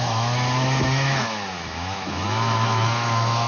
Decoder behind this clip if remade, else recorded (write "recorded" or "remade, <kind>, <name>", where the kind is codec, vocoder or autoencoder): remade, autoencoder, DAC-VAE